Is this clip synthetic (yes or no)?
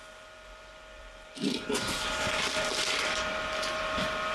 yes